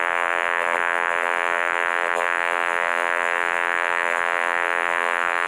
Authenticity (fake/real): fake